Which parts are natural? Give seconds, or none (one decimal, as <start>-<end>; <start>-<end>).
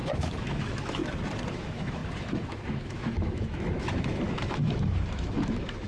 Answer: 1.0-1.5